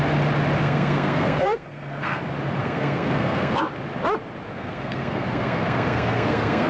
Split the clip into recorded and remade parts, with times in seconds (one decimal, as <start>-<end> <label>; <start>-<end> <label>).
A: 0.0-0.6 recorded; 0.6-2.2 remade; 2.2-2.6 recorded; 2.6-3.7 remade; 3.7-4.5 recorded; 4.5-6.7 remade